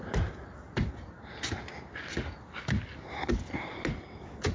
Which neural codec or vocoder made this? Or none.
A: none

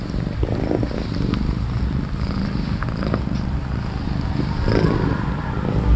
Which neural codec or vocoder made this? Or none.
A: none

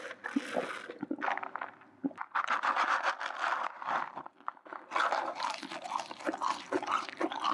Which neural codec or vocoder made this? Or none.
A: none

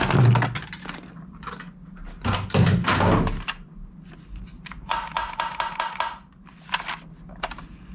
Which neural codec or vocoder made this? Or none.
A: none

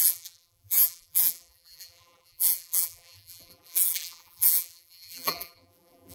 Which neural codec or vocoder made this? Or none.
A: vocoder, BigVGAN v2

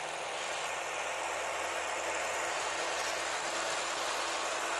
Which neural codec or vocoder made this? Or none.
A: none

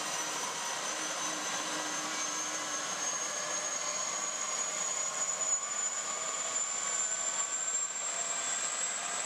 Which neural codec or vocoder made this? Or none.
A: vocoder, BigVGAN v2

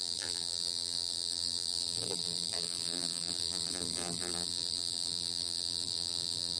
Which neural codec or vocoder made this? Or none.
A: vocoder, BigVGAN v2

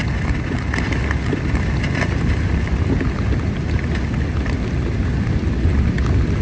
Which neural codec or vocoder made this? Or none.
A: none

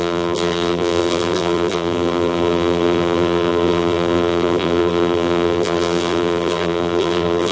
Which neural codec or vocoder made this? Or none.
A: vocoder, BigVGAN v2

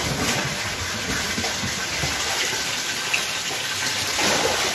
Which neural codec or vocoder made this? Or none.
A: vocoder, BigVGAN v2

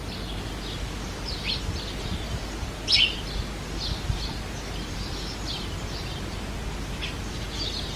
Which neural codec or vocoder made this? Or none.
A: none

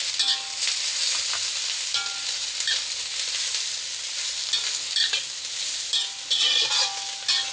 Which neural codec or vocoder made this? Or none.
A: none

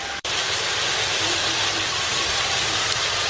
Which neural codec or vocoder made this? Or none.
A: vocoder, BigVGAN v2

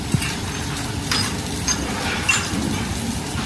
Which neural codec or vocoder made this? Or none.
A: vocoder, BigVGAN v2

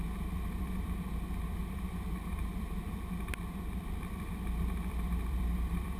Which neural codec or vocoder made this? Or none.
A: vocoder, BigVGAN v2